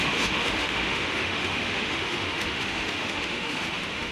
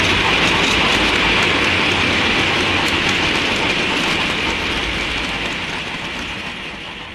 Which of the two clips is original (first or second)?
second